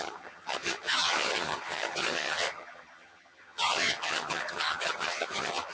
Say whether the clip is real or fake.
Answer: fake